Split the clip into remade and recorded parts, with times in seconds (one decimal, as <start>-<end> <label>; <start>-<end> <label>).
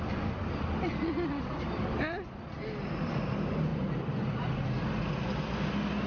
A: 0.0-6.1 recorded